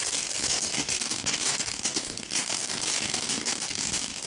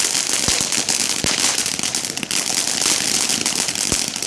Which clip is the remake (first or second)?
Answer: first